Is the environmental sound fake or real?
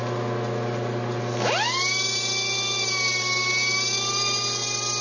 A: real